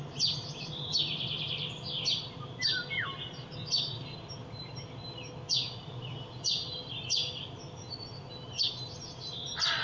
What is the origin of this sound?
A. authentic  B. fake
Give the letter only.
A